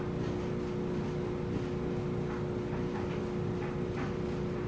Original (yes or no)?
yes